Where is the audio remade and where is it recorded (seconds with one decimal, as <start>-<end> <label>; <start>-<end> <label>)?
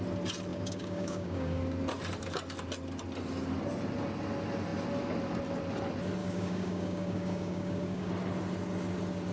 0.0-0.5 recorded; 0.5-1.6 remade; 1.6-6.2 recorded; 6.2-8.1 remade; 8.1-9.3 recorded